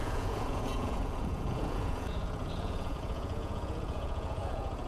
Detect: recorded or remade remade